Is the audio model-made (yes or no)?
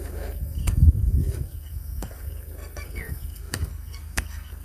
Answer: yes